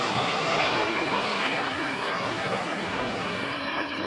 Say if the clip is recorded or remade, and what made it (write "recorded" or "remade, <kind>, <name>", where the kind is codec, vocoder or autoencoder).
remade, codec, SNAC